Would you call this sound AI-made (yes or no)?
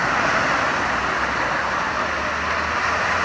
no